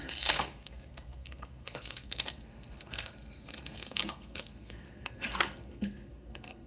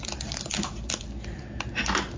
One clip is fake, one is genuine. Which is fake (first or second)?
first